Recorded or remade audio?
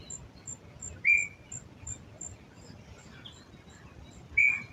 recorded